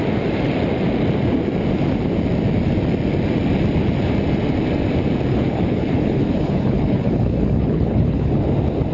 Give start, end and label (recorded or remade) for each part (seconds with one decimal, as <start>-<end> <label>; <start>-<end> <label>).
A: 0.0-5.3 recorded; 5.3-8.3 remade; 8.3-8.9 recorded